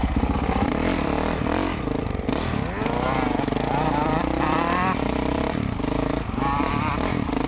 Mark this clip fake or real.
fake